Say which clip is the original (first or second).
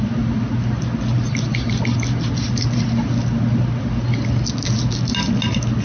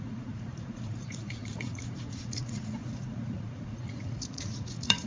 first